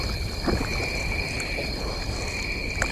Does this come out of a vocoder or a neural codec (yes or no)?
yes